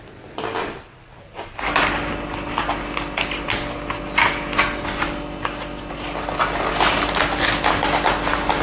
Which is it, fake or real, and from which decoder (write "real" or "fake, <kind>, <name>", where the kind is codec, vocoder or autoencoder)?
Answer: real